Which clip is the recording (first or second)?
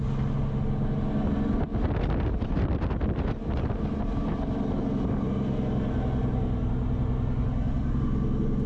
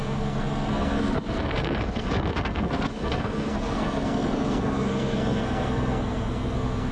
first